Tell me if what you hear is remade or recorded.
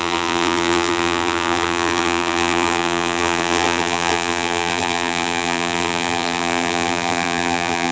remade